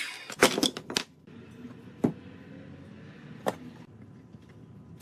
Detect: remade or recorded recorded